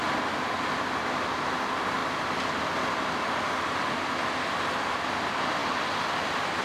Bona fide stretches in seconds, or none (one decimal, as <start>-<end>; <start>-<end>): 0.0-6.6